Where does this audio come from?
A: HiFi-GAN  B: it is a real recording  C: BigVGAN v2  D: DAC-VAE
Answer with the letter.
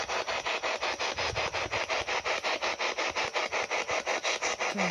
B